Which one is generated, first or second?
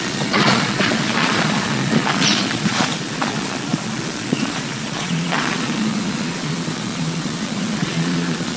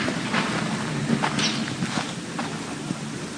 first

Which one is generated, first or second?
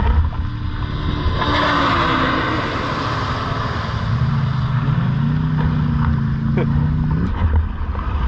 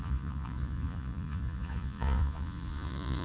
second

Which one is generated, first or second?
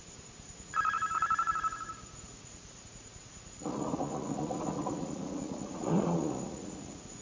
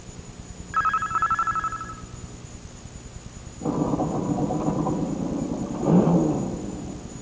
first